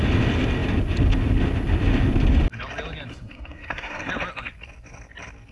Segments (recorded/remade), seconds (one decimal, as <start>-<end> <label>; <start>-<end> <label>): 0.0-3.1 recorded; 3.1-4.1 remade; 4.1-5.5 recorded